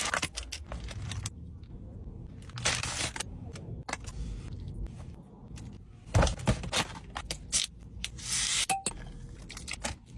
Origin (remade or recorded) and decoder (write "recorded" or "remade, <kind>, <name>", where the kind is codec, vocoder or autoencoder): recorded